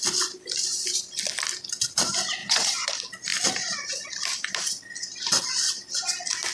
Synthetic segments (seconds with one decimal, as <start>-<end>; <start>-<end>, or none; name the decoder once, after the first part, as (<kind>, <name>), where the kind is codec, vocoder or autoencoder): 2.4-2.9 (vocoder, WaveNeXt)